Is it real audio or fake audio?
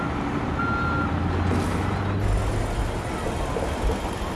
real